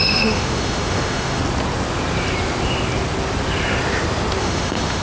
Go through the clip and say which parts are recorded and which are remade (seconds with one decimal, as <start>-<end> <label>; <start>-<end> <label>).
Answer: 0.0-1.4 remade; 1.4-4.4 recorded; 4.4-5.0 remade